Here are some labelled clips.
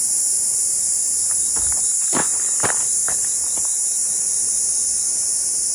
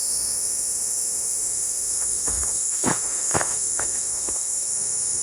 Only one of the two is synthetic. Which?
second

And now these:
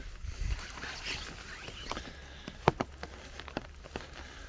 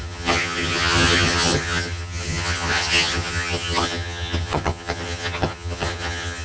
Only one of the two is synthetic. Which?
second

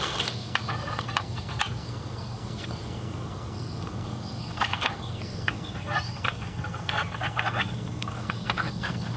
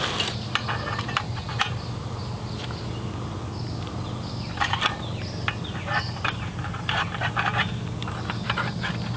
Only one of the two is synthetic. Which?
first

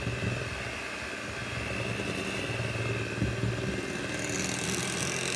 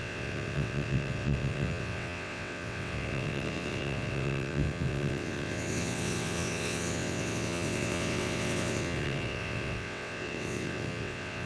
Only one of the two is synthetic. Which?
second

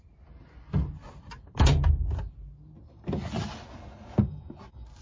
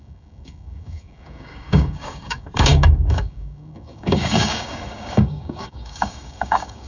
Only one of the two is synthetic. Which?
second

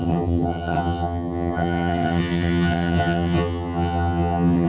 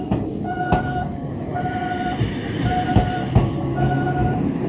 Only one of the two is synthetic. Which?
first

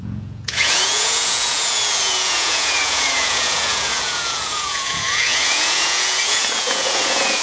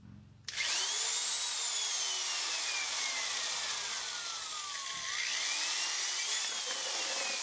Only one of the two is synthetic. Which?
first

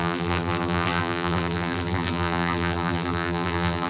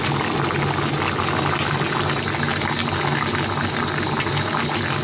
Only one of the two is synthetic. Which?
first